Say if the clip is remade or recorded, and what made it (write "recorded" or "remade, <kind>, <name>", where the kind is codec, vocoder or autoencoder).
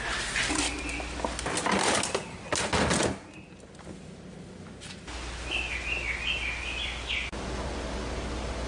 recorded